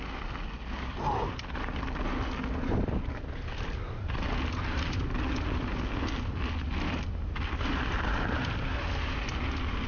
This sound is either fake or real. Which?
real